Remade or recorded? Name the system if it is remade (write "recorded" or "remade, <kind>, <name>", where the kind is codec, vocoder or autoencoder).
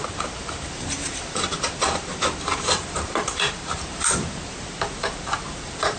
remade, vocoder, BigVGAN v2